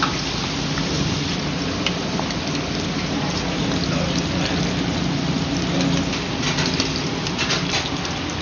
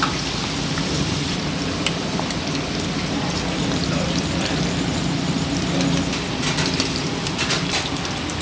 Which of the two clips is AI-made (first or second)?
second